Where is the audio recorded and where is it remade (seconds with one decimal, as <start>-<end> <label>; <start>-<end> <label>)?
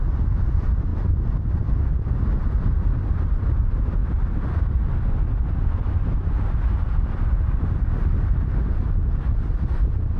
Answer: 0.0-10.2 recorded